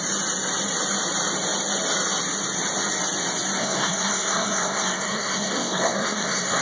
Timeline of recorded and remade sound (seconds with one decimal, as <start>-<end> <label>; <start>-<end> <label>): 0.0-3.6 recorded; 3.6-6.6 remade